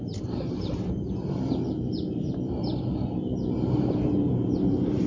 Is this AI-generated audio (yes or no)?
yes